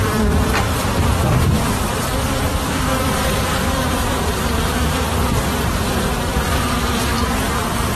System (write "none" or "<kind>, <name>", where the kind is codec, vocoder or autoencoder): vocoder, BigVGAN v2